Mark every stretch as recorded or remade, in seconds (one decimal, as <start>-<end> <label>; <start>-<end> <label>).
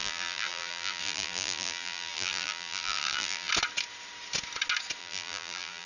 0.0-3.5 remade; 3.5-5.0 recorded; 5.0-5.9 remade